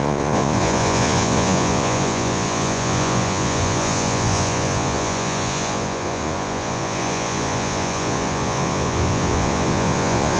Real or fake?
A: fake